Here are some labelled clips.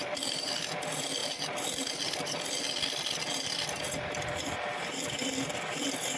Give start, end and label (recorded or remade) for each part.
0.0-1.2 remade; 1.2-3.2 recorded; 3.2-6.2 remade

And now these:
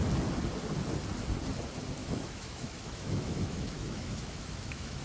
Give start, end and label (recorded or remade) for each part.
0.0-2.0 recorded; 2.0-5.0 remade

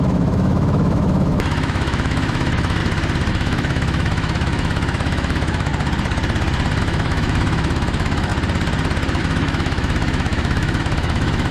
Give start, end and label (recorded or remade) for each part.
0.0-2.8 remade; 2.8-3.3 recorded; 3.3-5.7 remade; 5.7-6.8 recorded; 6.8-8.3 remade; 8.3-9.2 recorded; 9.2-11.5 remade

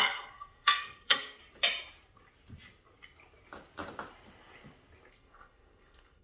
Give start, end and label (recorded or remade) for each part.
0.0-1.4 remade; 1.4-5.1 recorded; 5.1-6.2 remade

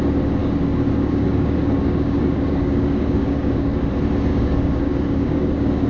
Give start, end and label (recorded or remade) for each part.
0.0-0.4 recorded; 0.4-3.9 remade; 3.9-4.3 recorded; 4.3-5.9 remade

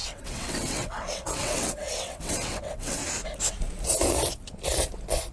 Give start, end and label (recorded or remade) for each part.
0.0-3.0 remade; 3.0-5.3 recorded